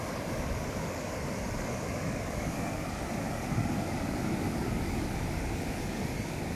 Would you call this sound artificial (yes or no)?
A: yes